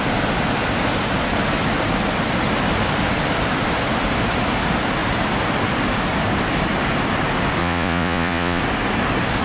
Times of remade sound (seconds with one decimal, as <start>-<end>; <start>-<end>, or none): 7.6-8.6